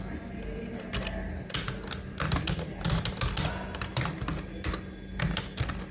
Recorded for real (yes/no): yes